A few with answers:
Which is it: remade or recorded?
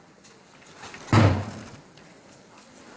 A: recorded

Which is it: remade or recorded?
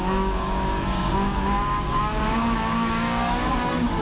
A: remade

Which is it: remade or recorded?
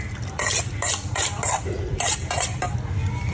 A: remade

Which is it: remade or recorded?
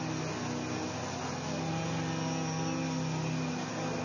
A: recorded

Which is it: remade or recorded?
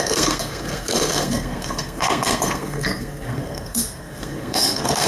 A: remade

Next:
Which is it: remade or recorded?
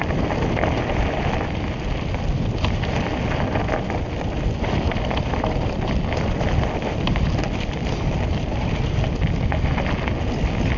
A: recorded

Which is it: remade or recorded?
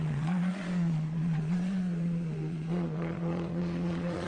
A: remade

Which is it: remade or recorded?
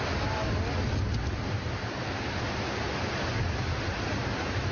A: recorded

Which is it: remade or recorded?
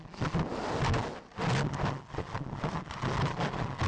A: recorded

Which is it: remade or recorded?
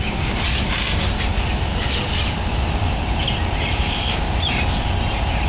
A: recorded